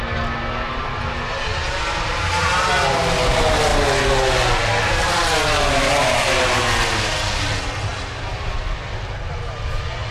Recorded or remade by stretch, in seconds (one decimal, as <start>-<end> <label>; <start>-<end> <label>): 0.0-10.1 recorded